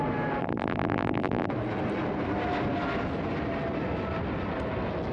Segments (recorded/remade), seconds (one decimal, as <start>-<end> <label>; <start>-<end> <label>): 0.0-0.4 recorded; 0.4-1.5 remade; 1.5-5.1 recorded